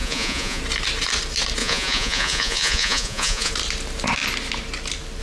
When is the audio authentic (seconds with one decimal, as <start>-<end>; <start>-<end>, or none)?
0.6-1.6; 3.5-5.2